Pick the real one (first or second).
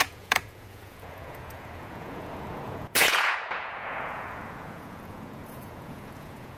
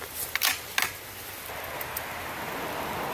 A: second